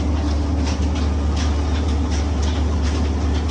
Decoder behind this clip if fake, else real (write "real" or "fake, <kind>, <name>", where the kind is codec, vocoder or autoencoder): real